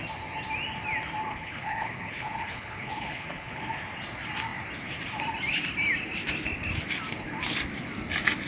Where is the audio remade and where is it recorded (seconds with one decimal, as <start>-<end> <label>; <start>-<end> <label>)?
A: 0.0-1.3 recorded; 1.3-3.6 remade; 3.6-8.5 recorded